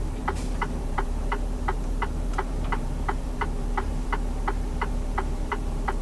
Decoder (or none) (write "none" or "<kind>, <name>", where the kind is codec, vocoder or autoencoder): vocoder, BigVGAN v2